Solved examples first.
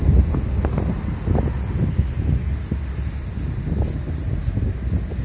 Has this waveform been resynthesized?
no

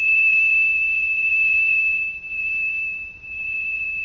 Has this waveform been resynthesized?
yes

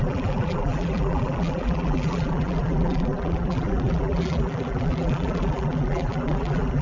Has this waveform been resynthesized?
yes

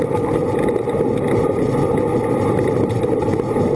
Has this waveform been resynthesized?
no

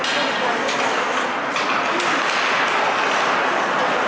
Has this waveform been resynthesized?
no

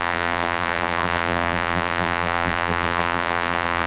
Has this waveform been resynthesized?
yes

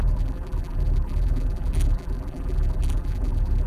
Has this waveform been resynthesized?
yes